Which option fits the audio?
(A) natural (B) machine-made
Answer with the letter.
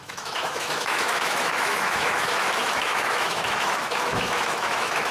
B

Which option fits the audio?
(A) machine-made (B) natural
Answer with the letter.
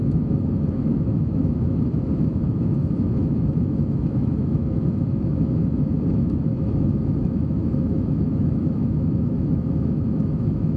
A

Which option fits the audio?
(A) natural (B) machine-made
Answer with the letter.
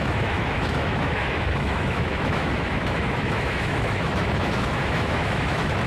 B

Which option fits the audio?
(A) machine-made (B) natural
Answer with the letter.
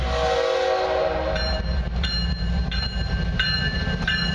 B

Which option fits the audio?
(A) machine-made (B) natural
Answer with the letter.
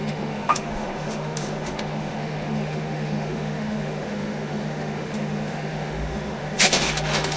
A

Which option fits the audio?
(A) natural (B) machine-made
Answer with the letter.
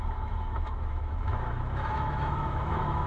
B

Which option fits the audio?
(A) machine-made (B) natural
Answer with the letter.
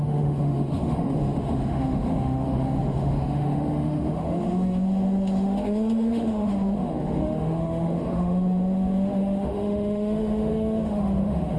A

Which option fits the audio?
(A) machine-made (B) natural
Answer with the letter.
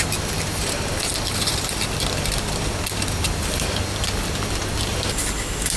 B